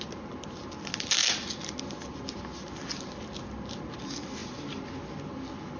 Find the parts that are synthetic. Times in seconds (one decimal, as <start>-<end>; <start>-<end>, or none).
none